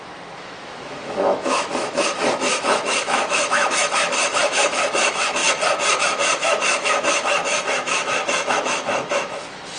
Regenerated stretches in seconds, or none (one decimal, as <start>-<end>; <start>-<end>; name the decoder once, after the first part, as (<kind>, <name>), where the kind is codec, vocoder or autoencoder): 0.0-5.4 (autoencoder, DAC-VAE); 6.0-9.8